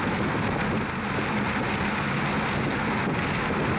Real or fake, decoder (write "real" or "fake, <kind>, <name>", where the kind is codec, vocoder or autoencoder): real